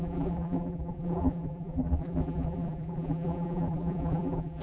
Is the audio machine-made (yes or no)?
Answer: yes